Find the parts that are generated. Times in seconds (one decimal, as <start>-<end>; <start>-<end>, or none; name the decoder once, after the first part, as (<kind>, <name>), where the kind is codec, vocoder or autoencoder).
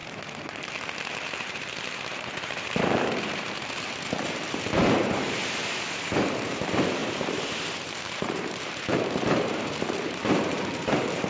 1.1-11.3 (vocoder, BigVGAN v2)